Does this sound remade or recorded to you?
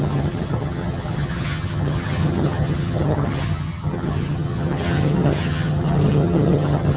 remade